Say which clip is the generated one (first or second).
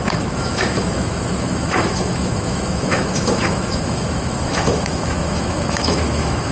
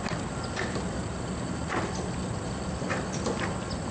first